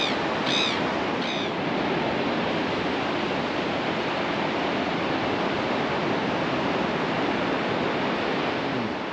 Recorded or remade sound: recorded